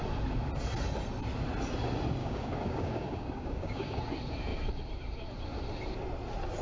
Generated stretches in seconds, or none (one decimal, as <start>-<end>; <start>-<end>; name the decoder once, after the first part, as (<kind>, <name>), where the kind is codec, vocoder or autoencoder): 2.2-4.0 (codec, DAC)